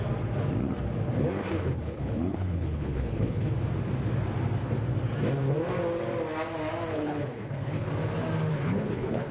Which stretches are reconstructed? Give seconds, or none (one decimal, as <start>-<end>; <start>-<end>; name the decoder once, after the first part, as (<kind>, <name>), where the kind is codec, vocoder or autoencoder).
1.5-3.5 (codec, HILCodec); 6.9-7.9; 8.5-9.3